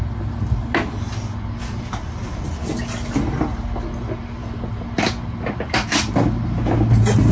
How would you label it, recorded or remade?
recorded